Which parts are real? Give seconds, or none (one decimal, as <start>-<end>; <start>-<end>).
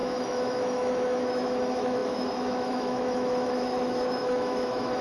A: none